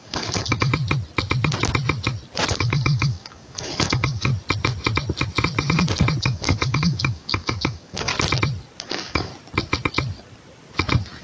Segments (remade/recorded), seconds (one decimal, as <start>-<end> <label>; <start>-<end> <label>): 0.0-0.7 remade; 0.7-2.5 recorded; 2.5-4.3 remade; 4.3-6.2 recorded; 6.2-8.1 remade; 8.1-8.8 recorded; 8.8-9.3 remade; 9.3-11.2 recorded